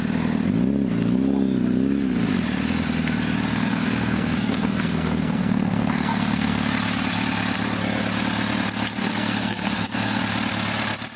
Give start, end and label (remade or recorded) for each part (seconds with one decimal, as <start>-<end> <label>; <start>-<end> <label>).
0.0-3.5 recorded; 3.5-6.7 remade; 6.7-9.0 recorded; 9.0-10.2 remade; 10.2-11.2 recorded